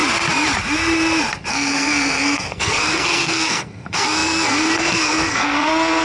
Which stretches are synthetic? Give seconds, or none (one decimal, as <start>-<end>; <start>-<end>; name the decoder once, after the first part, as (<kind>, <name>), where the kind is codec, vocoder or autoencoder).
1.5-6.0 (codec, SNAC)